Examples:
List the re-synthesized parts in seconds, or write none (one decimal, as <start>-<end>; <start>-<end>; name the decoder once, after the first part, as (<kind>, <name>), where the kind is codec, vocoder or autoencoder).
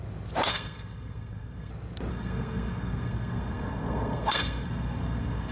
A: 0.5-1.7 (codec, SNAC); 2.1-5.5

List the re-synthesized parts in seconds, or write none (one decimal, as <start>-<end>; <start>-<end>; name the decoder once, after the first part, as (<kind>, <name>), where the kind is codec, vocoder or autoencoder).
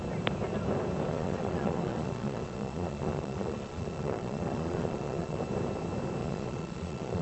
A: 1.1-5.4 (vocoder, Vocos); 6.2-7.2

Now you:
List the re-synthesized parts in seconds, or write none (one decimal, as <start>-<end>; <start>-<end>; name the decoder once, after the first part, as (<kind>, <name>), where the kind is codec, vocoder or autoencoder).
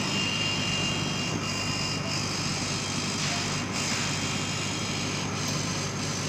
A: none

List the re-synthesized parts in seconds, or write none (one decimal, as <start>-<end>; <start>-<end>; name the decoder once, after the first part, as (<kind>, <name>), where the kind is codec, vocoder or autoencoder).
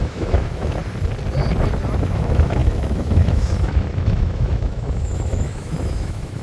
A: 0.0-0.8 (autoencoder, DAC-VAE); 2.0-6.4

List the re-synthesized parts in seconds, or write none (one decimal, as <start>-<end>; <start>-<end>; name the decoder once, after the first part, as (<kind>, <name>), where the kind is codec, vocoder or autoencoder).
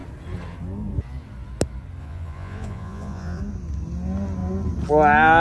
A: 2.0-3.4 (vocoder, Vocos)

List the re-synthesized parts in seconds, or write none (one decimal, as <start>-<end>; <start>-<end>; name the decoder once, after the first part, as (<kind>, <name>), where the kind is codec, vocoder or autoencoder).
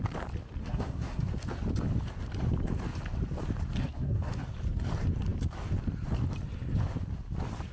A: 0.6-1.3 (codec, SNAC); 3.8-4.4